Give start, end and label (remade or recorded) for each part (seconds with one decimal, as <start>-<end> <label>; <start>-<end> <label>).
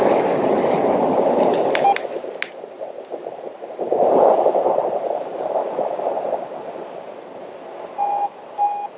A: 0.0-1.5 recorded; 1.5-2.3 remade; 2.3-4.8 recorded; 4.8-6.7 remade; 6.7-9.0 recorded